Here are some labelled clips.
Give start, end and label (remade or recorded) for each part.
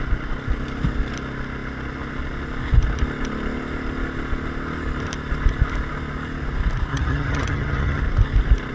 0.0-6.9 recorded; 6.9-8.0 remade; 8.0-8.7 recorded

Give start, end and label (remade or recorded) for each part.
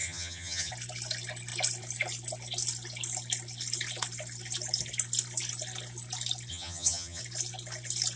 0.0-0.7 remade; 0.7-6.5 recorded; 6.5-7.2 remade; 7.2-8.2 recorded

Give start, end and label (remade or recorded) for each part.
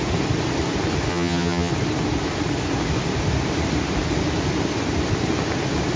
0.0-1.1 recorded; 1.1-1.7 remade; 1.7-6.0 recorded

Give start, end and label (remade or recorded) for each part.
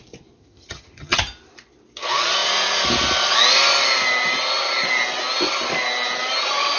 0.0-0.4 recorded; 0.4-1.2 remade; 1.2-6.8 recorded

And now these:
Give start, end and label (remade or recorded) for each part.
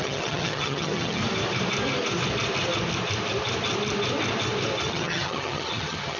0.0-1.2 remade; 1.2-4.9 recorded; 4.9-6.2 remade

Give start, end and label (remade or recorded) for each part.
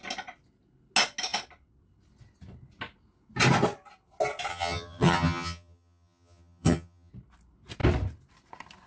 0.0-4.5 recorded; 4.5-7.1 remade; 7.1-8.9 recorded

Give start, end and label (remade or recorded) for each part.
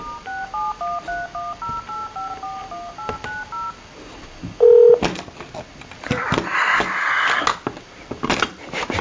0.0-9.0 recorded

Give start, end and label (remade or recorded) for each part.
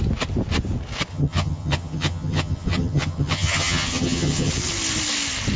0.0-1.1 recorded; 1.1-4.5 remade; 4.5-5.6 recorded